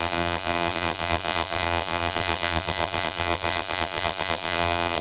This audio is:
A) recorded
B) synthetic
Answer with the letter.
B